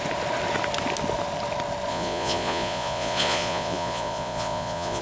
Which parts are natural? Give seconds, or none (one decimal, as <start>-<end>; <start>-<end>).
0.0-1.9